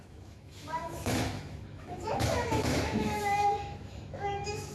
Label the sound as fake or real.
fake